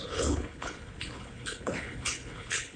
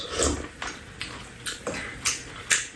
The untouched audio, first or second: second